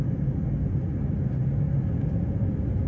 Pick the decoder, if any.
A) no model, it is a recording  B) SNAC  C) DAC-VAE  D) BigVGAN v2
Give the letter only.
A